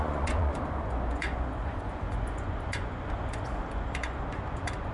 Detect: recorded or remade remade